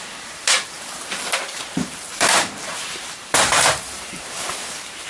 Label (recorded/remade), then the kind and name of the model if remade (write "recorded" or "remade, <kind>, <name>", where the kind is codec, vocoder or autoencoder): remade, vocoder, BigVGAN v2